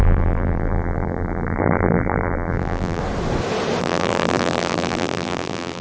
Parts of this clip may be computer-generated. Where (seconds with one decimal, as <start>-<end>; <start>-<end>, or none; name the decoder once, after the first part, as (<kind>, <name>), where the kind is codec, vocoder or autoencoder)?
0.0-3.0 (vocoder, BigVGAN v2); 3.8-5.8